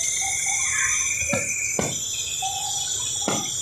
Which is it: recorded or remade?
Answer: recorded